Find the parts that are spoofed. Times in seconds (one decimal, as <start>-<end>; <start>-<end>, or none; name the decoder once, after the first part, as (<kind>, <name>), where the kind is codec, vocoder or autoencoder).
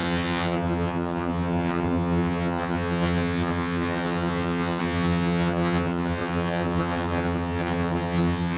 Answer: 0.0-8.6 (vocoder, HiFi-GAN)